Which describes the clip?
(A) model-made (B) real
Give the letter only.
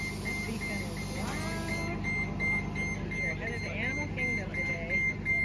B